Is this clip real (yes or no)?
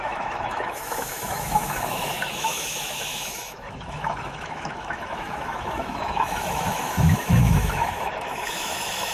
no